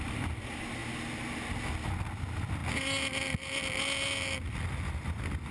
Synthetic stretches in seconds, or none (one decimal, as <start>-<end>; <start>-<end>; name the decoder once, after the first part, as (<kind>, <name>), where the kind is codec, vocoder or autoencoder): none